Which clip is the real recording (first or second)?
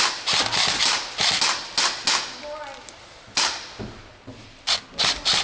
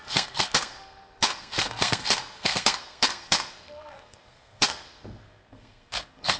first